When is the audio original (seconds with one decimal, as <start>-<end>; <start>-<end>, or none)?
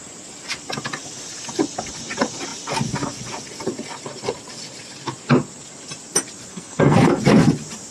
0.0-6.5; 7.2-7.9